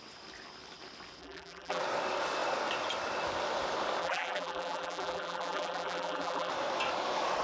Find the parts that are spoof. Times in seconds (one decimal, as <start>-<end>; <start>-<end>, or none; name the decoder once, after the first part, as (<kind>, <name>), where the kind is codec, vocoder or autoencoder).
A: 1.2-1.8 (vocoder, BigVGAN v2); 4.0-6.5